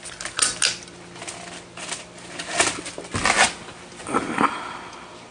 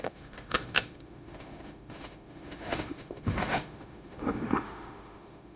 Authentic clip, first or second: first